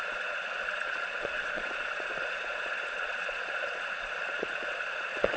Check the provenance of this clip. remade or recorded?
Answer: remade